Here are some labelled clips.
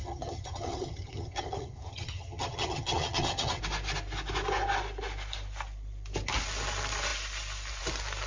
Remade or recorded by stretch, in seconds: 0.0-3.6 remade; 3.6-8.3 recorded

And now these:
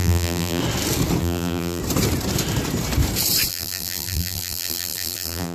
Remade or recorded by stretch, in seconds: 0.0-0.6 remade; 0.6-1.2 recorded; 1.2-1.8 remade; 1.8-3.5 recorded; 3.5-5.5 remade

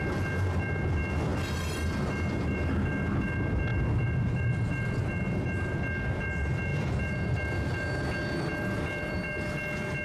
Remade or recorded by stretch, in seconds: 0.0-1.3 recorded; 1.3-2.9 remade; 2.9-3.7 recorded; 3.7-4.5 remade; 4.5-6.7 recorded; 6.7-9.5 remade; 9.5-10.0 recorded

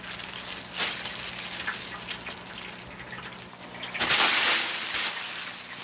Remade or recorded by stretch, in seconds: 0.0-5.8 recorded

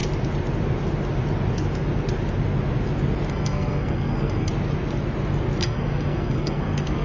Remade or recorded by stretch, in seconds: 0.0-3.3 recorded; 3.3-4.5 remade; 4.5-5.6 recorded; 5.6-7.0 remade

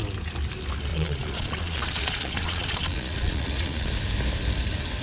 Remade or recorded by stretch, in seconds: 0.0-0.9 recorded; 0.9-3.9 remade; 3.9-5.0 recorded

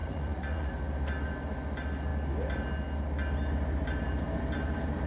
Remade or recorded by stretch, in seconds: 0.0-0.7 remade; 0.7-5.1 recorded

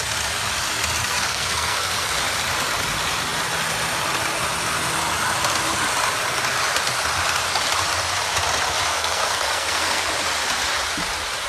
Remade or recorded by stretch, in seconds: 0.0-1.0 recorded; 1.0-2.2 remade; 2.2-8.9 recorded; 8.9-10.1 remade; 10.1-11.5 recorded